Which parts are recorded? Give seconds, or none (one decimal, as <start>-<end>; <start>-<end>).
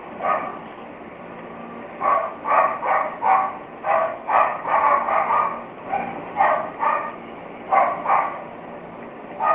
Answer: 0.0-1.6; 2.3-4.0; 5.7-9.5